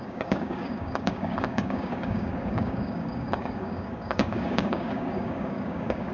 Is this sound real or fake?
fake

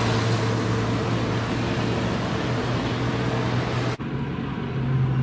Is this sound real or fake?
real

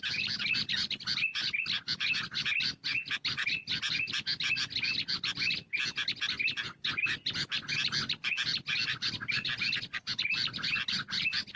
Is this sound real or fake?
real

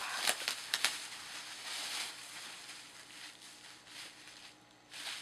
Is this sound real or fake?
real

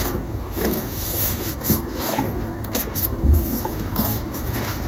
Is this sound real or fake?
fake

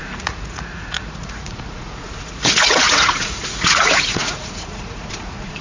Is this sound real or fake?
fake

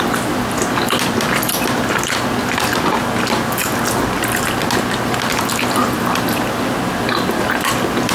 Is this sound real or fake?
real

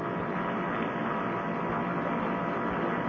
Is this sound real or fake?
real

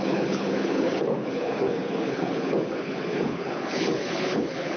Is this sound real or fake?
fake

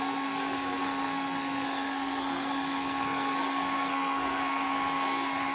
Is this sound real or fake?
fake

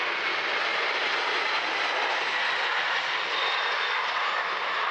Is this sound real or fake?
real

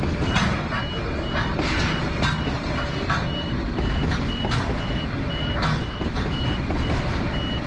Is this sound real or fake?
real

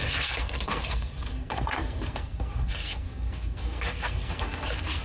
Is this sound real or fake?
fake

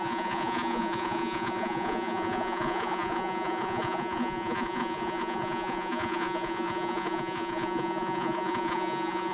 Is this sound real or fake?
fake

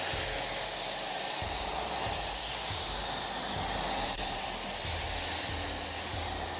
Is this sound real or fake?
real